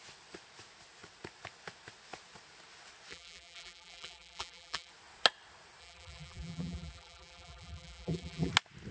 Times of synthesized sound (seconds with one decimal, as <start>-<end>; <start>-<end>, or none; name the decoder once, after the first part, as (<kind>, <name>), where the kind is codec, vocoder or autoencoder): 3.1-4.9 (vocoder, BigVGAN v2); 5.8-8.5